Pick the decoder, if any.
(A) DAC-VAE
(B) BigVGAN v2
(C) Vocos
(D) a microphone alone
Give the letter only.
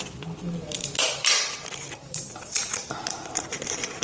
B